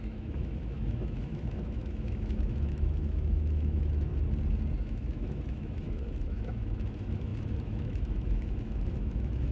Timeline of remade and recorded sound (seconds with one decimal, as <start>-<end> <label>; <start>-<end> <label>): 0.0-4.1 remade; 4.1-4.8 recorded; 4.8-9.5 remade